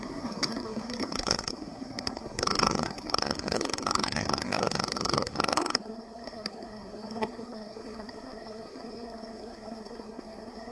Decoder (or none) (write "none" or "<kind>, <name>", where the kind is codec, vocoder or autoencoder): codec, SNAC